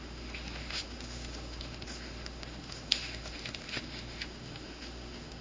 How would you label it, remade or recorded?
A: remade